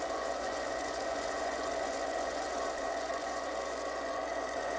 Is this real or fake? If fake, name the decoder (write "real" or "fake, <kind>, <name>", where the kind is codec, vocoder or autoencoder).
fake, vocoder, Vocos